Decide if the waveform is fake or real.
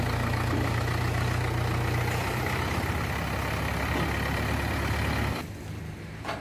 real